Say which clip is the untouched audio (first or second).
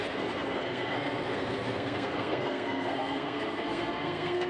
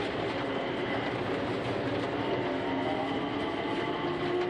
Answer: second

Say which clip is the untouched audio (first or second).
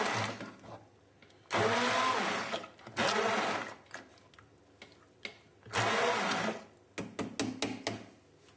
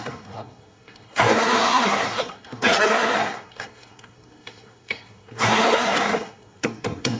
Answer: first